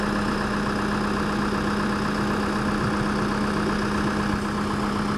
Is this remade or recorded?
recorded